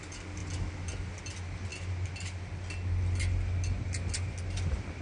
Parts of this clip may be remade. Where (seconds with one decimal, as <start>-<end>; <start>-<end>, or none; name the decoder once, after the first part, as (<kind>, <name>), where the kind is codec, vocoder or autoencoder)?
none